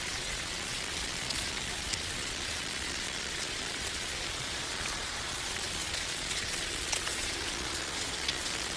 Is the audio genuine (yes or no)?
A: no